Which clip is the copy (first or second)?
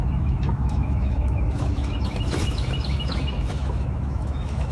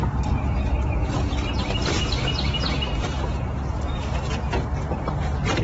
first